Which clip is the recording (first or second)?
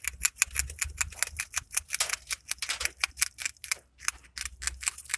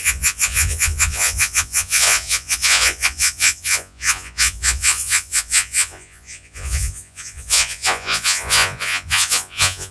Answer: first